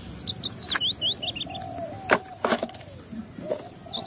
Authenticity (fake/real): real